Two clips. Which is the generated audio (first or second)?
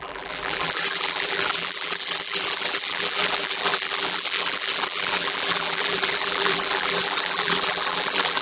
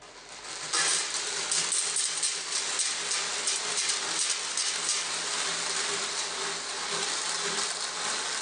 first